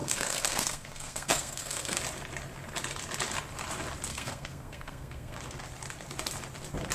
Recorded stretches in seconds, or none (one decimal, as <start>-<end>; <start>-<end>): 2.0-4.1; 5.4-6.9